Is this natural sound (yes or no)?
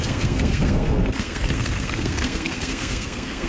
no